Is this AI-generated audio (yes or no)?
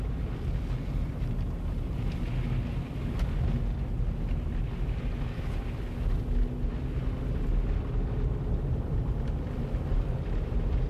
no